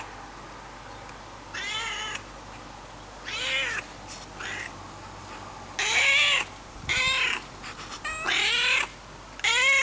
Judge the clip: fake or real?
real